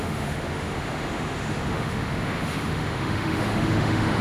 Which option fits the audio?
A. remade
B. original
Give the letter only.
A